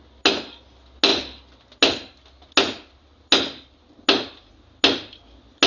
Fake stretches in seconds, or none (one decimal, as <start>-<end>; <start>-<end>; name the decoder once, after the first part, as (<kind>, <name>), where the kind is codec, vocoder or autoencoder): none